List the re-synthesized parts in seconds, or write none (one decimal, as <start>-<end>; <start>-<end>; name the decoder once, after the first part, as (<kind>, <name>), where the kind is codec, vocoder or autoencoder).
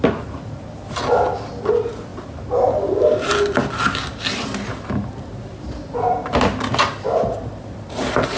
none